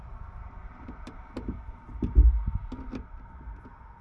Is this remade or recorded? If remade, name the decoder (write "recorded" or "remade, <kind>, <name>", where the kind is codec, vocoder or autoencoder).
recorded